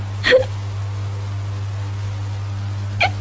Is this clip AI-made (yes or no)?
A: no